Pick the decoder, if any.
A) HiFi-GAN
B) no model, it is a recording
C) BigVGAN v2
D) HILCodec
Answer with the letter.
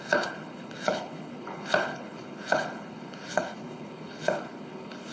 D